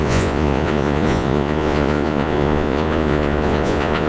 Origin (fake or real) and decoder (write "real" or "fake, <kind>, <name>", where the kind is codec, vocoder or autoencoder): fake, vocoder, Vocos